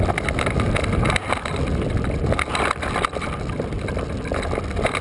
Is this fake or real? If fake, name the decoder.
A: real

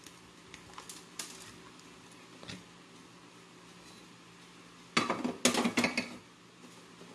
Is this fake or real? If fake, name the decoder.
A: real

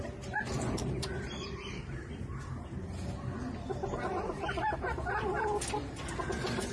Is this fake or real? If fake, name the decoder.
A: fake, vocoder, BigVGAN v2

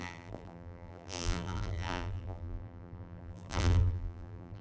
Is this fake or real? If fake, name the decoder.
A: fake, vocoder, BigVGAN v2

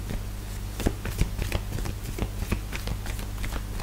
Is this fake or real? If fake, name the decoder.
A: real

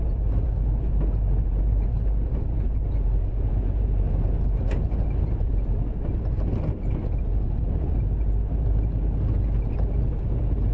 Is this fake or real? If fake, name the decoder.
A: fake, vocoder, BigVGAN v2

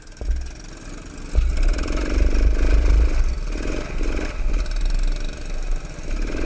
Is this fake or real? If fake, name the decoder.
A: real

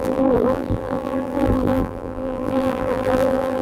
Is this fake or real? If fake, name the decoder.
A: fake, vocoder, BigVGAN v2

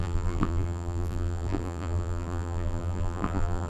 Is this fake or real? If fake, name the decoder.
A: fake, vocoder, BigVGAN v2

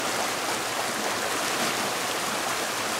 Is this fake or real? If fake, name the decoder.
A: real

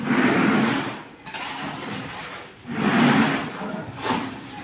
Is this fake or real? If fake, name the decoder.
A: real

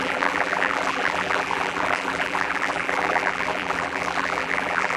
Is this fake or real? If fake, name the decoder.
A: fake, vocoder, BigVGAN v2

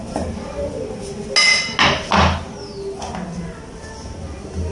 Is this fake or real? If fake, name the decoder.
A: real